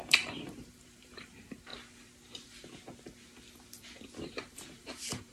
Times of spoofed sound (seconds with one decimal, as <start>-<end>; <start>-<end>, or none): 0.0-1.7; 4.2-5.3